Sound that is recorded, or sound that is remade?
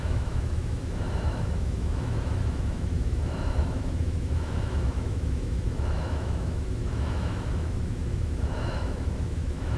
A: remade